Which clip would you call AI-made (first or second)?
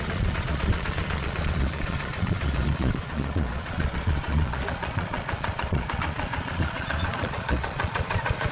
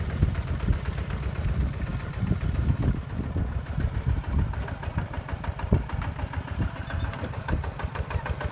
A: first